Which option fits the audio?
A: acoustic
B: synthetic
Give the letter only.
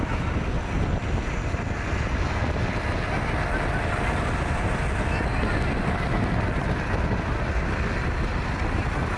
A